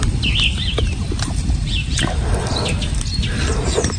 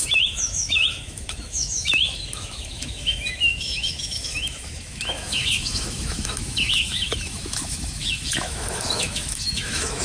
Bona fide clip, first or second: first